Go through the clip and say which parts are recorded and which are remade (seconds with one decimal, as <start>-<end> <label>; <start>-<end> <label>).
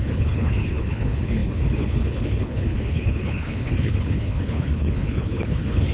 0.0-5.9 remade